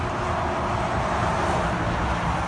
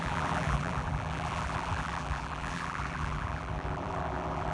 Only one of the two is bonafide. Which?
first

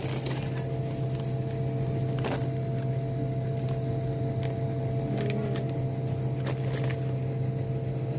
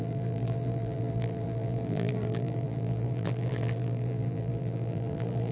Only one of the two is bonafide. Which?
first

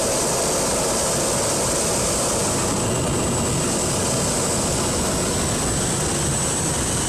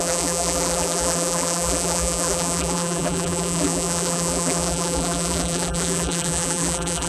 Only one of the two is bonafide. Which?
first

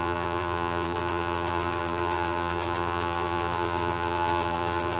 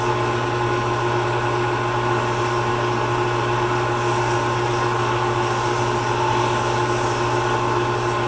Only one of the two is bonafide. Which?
second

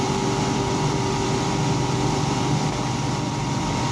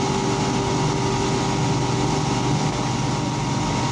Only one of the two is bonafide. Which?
second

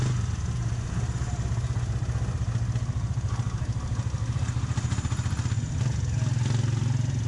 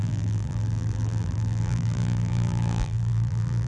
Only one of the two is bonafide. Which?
first